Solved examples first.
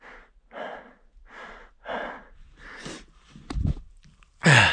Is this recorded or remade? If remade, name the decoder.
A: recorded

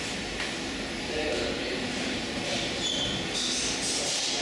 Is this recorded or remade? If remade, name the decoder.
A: recorded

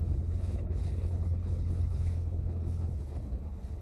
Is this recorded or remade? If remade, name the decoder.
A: remade, codec, HILCodec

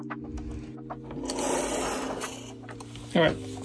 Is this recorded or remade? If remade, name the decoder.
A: recorded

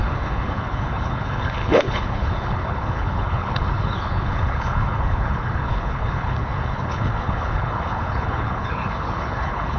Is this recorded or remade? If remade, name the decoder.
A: remade, codec, HILCodec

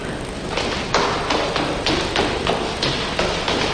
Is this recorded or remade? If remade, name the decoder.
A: recorded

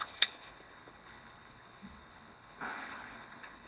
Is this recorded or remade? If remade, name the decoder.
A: remade, codec, HILCodec